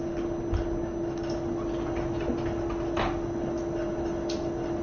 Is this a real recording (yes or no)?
yes